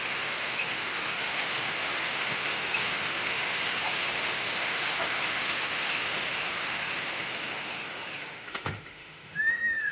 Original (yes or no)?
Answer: no